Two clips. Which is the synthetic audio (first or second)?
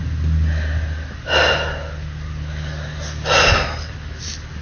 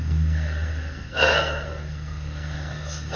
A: second